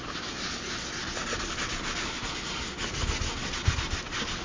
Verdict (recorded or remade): recorded